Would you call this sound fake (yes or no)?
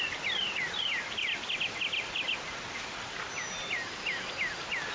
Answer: no